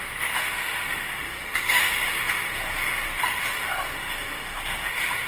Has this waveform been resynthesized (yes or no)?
yes